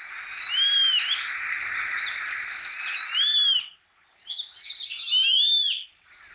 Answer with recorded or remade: recorded